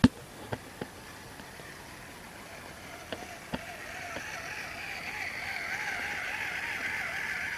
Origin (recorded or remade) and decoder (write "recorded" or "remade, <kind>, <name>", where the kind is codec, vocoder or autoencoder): recorded